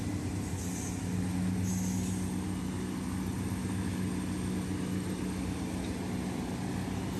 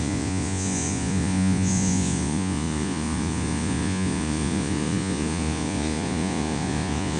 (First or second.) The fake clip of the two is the second